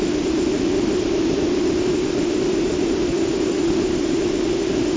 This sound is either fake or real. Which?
fake